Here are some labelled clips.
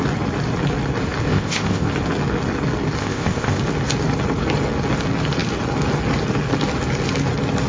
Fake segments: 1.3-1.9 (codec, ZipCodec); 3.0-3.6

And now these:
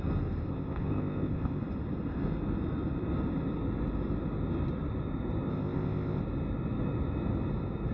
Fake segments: 0.5-1.6 (codec, ZipCodec); 5.5-6.2

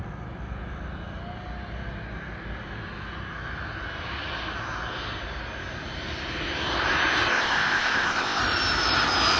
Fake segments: 7.3-8.4 (codec, ZipCodec)

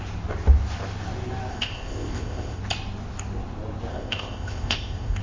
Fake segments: 1.5-2.6 (codec, ZipCodec); 3.9-5.2

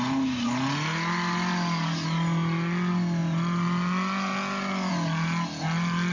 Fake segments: none

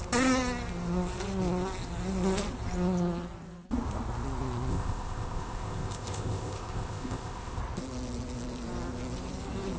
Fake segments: 4.7-7.6 (codec, ZipCodec)

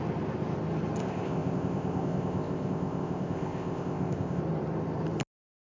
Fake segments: 1.0-4.4 (codec, ZipCodec)

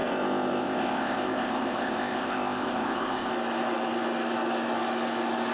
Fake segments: 0.0-3.3 (codec, ZipCodec)